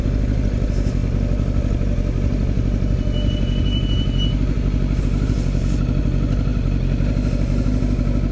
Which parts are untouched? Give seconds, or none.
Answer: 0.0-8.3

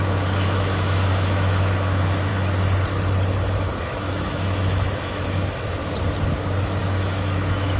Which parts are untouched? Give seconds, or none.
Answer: 2.3-3.8; 5.8-6.8

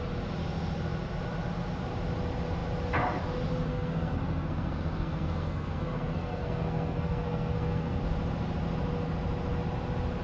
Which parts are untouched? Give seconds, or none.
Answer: 0.0-3.7; 8.0-10.2